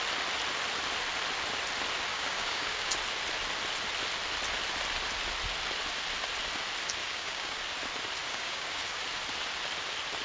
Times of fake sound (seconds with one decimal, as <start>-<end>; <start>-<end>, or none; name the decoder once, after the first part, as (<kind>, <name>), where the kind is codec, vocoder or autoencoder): 2.1-2.9 (codec, DAC); 7.0-7.6; 8.3-9.0